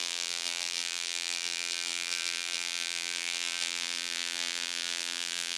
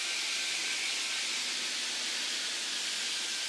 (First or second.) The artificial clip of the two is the first